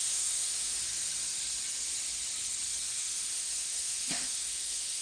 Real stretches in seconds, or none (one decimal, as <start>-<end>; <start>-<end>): 0.8-2.9